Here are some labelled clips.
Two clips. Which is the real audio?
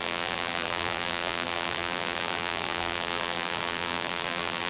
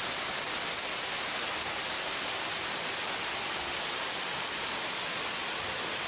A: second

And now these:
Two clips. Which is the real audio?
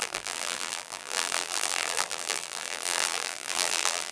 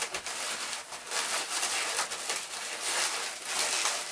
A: second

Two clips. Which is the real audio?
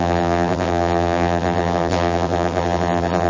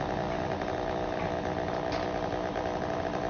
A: second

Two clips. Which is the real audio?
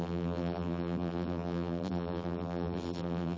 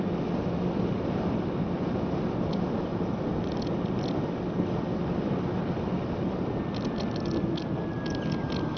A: second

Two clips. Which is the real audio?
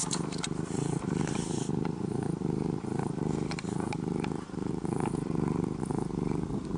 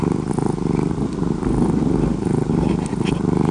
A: second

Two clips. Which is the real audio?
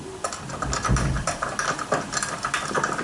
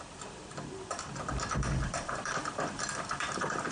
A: first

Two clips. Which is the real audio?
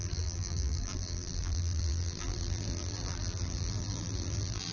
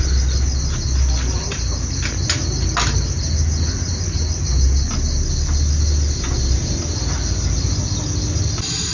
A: second